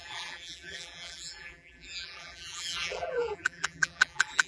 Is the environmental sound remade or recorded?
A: remade